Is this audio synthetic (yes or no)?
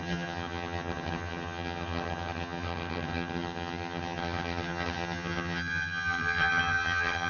yes